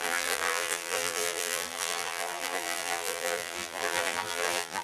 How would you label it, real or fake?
fake